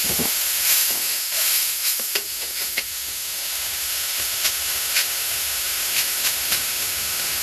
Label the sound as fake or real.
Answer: fake